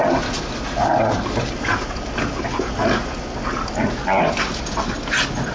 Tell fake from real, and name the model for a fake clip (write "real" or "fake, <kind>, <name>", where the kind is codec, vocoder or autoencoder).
real